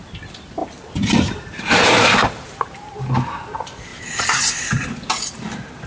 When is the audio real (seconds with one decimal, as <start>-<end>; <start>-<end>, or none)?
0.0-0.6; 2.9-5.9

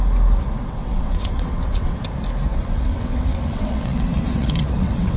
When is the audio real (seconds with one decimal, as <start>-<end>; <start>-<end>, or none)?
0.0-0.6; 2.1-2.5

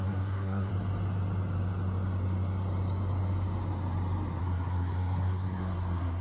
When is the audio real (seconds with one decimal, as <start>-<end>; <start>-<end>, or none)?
0.7-4.4